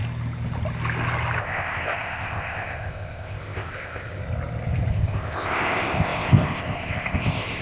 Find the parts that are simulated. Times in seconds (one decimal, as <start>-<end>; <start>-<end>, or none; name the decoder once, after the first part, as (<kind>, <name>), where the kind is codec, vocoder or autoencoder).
1.4-4.2 (codec, ZipCodec); 4.9-7.6